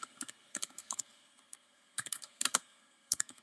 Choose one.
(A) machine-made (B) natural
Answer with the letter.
A